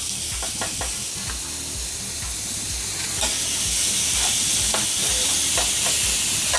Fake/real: real